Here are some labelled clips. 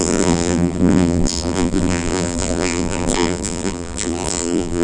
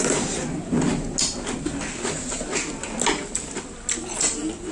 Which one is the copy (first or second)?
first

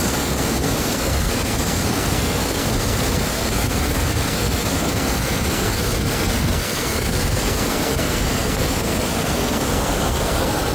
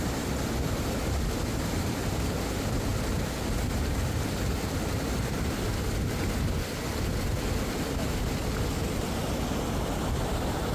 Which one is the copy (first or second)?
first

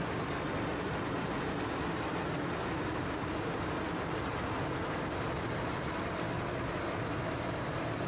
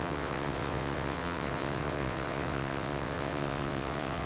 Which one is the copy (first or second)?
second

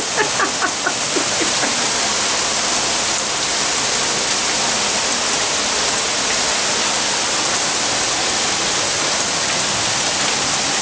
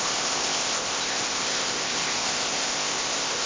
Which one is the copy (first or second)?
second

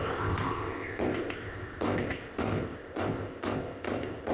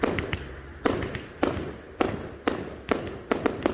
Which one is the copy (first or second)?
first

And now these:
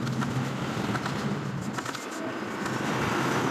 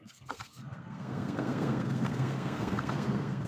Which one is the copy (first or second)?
second